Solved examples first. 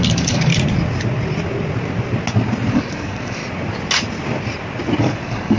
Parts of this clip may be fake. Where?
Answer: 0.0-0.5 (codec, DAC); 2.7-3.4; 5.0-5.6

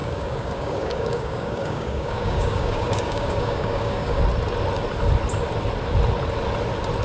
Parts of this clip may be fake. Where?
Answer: 0.0-4.2 (codec, DAC)

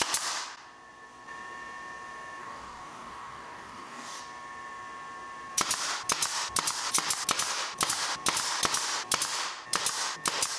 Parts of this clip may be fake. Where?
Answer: 2.4-4.2 (codec, DAC)